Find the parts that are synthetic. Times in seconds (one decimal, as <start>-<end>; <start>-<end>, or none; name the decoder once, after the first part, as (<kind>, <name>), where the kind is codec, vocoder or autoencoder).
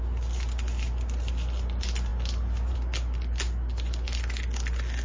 none